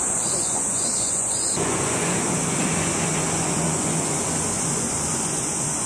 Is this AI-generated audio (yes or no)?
yes